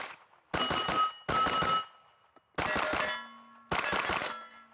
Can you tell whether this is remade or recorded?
recorded